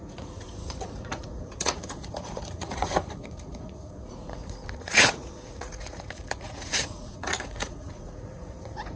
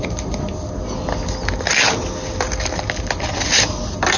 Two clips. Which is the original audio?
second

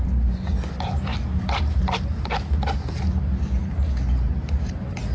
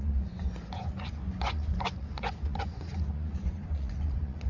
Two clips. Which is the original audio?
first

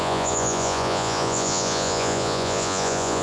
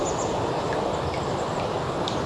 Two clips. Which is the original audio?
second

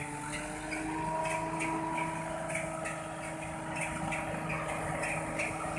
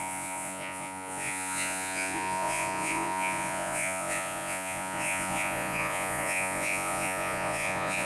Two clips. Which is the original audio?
first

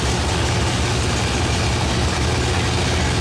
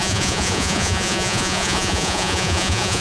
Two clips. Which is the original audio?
first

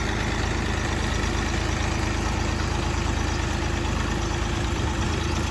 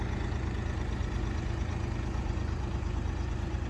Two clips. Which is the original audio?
first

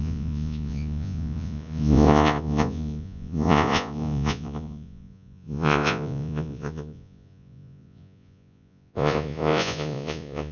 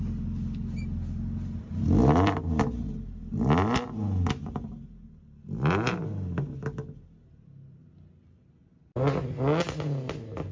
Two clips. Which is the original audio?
second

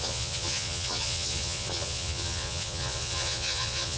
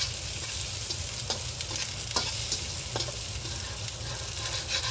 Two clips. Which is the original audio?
second